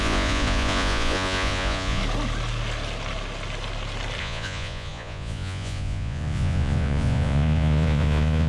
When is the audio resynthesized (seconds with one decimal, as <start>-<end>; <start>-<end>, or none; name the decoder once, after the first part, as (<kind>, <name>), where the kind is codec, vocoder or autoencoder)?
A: 0.0-2.0 (vocoder, Vocos); 4.2-8.5